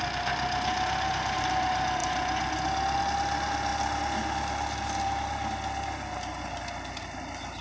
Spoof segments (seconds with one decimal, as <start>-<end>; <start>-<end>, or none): none

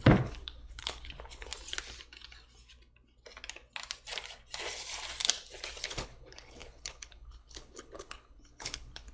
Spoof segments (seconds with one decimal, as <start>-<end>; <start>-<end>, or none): 0.0-1.5; 5.8-9.1